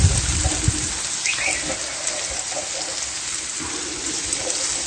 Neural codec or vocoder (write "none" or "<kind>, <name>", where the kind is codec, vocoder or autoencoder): none